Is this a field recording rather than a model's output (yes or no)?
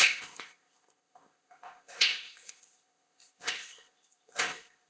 no